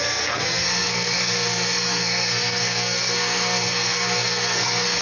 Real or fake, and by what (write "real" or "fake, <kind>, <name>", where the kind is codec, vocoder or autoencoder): fake, codec, SNAC